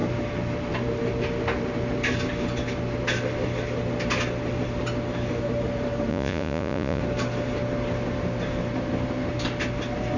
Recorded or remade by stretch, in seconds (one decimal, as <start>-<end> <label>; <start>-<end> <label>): 0.0-6.1 recorded; 6.1-7.0 remade; 7.0-10.2 recorded